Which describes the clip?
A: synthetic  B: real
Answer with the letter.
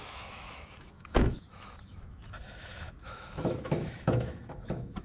A